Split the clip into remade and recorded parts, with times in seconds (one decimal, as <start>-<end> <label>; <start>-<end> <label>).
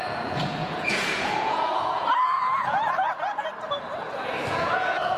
0.0-3.5 remade; 3.5-4.5 recorded; 4.5-5.2 remade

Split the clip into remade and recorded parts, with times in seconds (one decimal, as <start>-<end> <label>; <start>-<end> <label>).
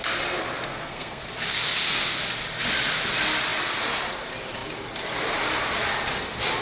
0.0-0.7 recorded; 0.7-1.2 remade; 1.2-6.6 recorded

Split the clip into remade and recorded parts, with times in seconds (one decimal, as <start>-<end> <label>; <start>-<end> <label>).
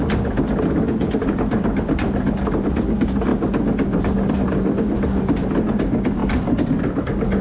0.0-7.4 recorded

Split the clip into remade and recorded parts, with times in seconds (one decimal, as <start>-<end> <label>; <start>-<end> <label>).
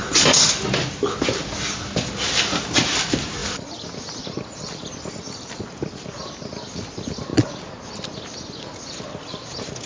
0.0-7.3 remade; 7.3-8.6 recorded; 8.6-9.9 remade